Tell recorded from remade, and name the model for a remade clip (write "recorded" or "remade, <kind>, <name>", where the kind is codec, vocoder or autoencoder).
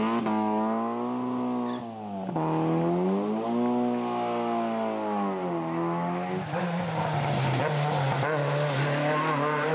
recorded